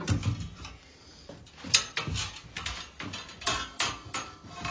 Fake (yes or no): no